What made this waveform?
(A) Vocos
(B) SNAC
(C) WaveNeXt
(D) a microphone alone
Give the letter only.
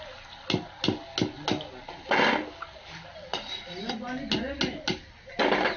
D